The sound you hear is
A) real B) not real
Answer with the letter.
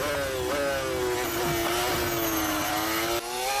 A